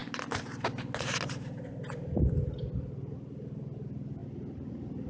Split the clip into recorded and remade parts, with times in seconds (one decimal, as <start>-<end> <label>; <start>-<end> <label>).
0.0-5.1 recorded